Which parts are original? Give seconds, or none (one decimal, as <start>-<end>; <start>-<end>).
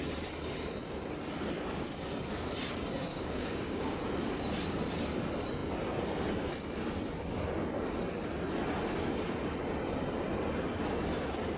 0.0-3.1; 4.0-11.6